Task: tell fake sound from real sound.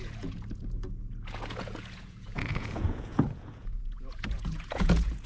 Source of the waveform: fake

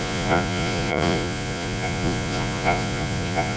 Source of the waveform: fake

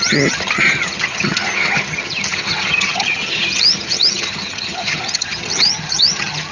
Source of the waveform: fake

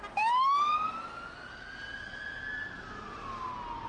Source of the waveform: real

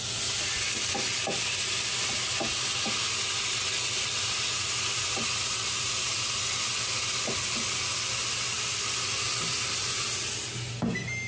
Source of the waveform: real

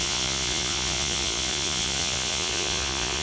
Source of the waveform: fake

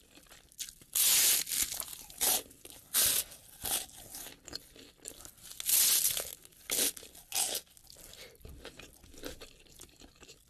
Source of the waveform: real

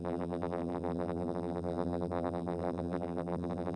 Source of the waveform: fake